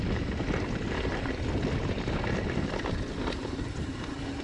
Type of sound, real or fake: real